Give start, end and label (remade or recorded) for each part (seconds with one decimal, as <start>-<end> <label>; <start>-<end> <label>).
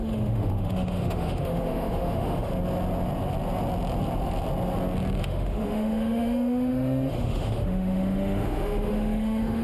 0.0-2.5 remade; 2.5-5.2 recorded; 5.2-9.6 remade